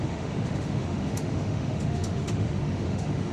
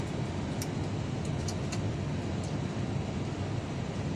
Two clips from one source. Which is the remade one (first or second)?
first